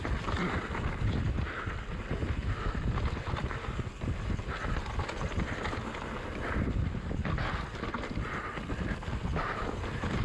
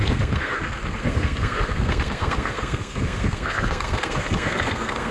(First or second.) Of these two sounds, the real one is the first